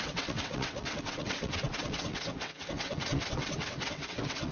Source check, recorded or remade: remade